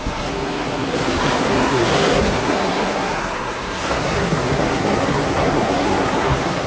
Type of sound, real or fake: fake